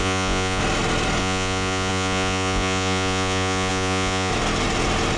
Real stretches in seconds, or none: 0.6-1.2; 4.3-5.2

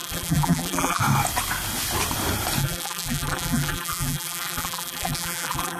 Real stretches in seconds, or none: 1.0-2.6

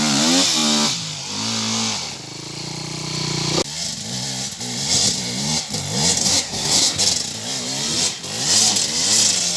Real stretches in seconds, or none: 0.0-6.2; 7.0-9.6

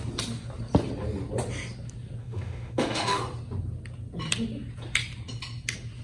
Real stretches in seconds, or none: 0.0-2.2; 3.2-6.0

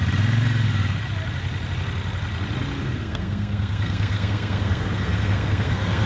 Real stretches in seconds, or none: 0.0-2.8

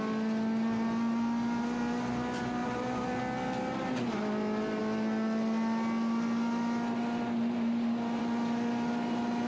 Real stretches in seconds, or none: 0.0-2.6; 3.2-9.5

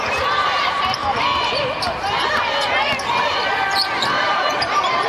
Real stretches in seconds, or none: 1.0-3.1

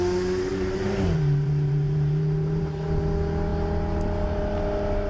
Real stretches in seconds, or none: 0.0-0.5; 3.0-5.1